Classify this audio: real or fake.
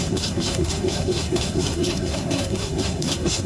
fake